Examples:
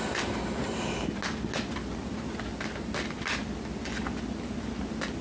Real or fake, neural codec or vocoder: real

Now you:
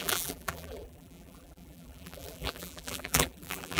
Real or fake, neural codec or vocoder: fake, vocoder, BigVGAN v2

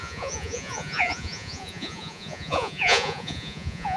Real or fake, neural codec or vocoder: fake, vocoder, Vocos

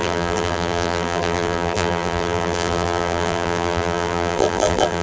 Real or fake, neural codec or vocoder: fake, vocoder, BigVGAN v2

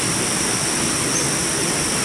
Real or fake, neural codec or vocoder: real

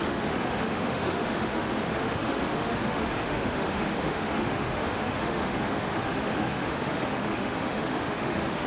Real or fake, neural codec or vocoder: fake, autoencoder, DAC-VAE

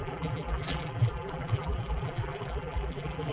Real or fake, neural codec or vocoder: fake, vocoder, BigVGAN v2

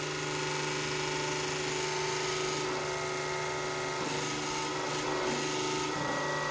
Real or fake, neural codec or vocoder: real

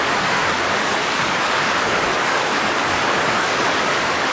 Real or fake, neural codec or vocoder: fake, codec, DAC